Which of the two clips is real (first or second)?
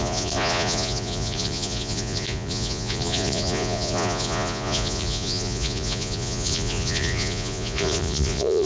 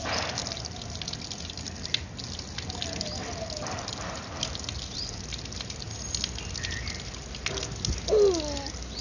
second